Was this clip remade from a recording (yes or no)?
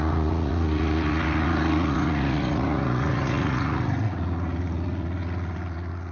yes